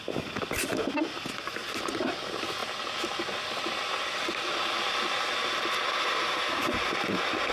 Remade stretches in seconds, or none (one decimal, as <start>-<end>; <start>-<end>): none